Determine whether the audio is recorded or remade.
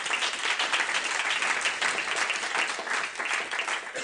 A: recorded